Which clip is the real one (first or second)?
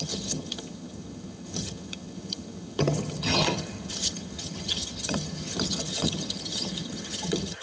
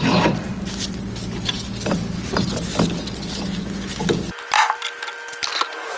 second